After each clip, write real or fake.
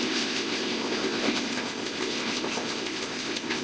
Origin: fake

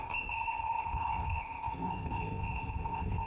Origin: fake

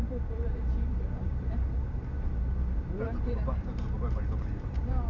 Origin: fake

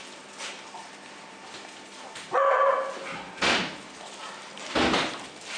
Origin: real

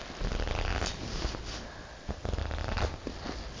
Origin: real